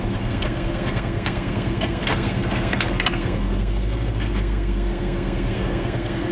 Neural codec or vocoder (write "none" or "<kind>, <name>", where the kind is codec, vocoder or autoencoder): codec, SNAC